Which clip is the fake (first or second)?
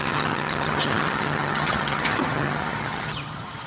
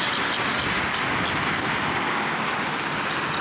first